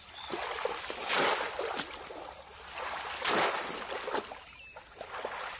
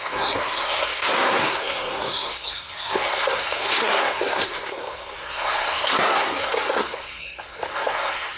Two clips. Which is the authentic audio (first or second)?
first